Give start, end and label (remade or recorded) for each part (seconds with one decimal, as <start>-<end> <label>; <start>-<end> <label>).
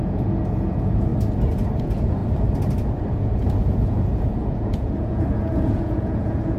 0.0-1.1 remade; 1.1-1.8 recorded; 1.8-2.2 remade; 2.2-3.1 recorded; 3.1-6.6 remade